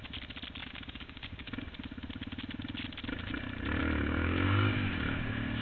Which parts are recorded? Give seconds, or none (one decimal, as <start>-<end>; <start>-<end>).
0.0-0.6; 1.5-3.8